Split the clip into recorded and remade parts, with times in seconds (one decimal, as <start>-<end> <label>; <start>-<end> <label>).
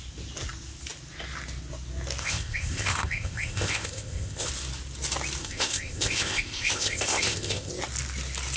0.0-2.2 recorded; 2.2-4.5 remade; 4.5-5.4 recorded; 5.4-7.7 remade; 7.7-8.6 recorded